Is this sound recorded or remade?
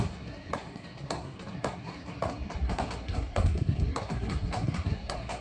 remade